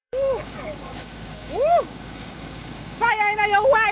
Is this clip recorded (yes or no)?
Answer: no